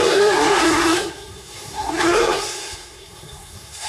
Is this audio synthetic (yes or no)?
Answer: yes